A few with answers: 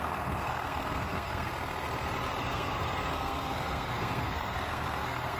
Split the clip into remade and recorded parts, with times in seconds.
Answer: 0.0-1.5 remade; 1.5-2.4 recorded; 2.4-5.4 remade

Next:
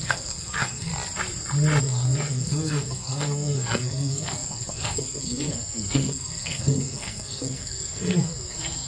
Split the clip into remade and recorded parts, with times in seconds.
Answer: 0.0-0.9 remade; 0.9-1.8 recorded; 1.8-8.9 remade

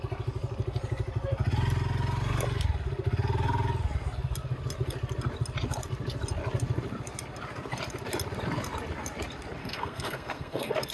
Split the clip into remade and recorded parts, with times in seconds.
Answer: 0.0-9.6 recorded; 9.6-10.9 remade